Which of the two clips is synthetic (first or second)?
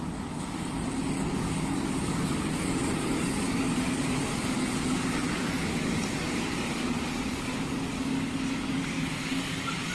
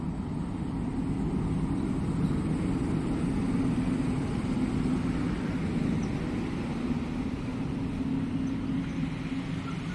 first